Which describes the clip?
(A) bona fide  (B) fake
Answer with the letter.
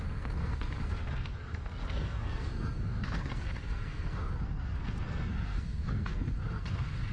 B